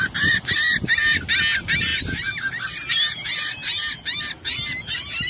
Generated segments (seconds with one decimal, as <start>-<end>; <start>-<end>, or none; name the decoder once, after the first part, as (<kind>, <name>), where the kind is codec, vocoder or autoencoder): none